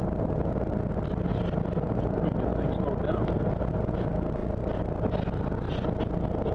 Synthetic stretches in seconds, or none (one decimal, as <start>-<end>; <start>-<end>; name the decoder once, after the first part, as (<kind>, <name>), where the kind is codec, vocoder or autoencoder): none